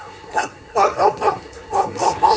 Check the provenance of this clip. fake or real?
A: fake